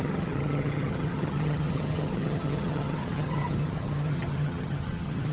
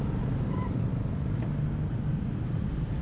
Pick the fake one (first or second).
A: first